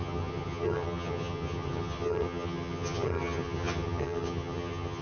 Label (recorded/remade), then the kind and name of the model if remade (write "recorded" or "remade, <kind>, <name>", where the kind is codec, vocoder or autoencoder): remade, vocoder, HiFi-GAN